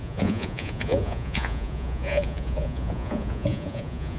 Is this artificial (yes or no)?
yes